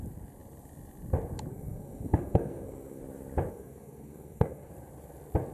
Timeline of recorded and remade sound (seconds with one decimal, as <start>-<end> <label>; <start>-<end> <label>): 0.0-1.5 recorded; 1.5-3.0 remade; 3.0-3.5 recorded; 3.5-4.7 remade; 4.7-5.5 recorded

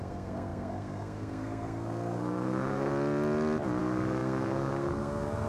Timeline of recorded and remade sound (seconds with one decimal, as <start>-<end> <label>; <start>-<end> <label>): 0.0-2.9 remade; 2.9-3.8 recorded; 3.8-5.5 remade

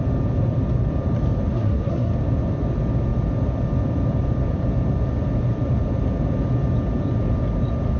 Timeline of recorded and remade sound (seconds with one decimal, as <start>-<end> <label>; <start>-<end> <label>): 0.0-1.5 recorded; 1.5-2.1 remade; 2.1-8.0 recorded

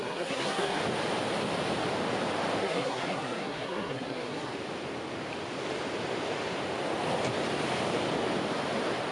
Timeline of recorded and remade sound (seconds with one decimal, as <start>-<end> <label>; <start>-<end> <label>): 0.0-0.8 remade; 0.8-2.6 recorded; 2.6-4.5 remade; 4.5-9.1 recorded

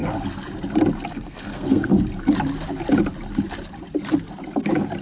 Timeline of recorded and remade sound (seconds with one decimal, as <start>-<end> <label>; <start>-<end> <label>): 0.0-1.1 recorded; 1.1-1.9 remade; 1.9-5.0 recorded